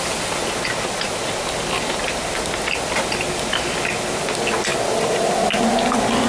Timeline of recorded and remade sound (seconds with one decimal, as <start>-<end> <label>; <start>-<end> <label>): 0.0-6.3 recorded